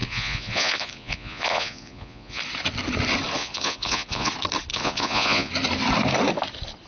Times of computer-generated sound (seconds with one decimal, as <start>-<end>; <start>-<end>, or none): 0.0-2.4; 3.4-4.3; 4.7-5.5